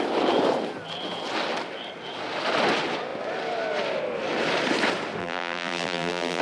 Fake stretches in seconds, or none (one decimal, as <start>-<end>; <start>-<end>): 5.2-6.4